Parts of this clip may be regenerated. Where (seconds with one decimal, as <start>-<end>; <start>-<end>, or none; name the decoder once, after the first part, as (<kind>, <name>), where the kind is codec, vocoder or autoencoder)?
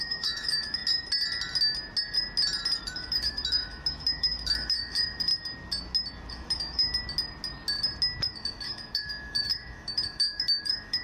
0.0-0.8 (autoencoder, DAC-VAE); 2.8-5.3; 6.3-6.9; 8.3-11.0